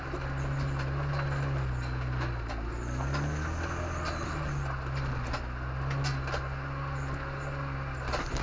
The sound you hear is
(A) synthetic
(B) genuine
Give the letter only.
B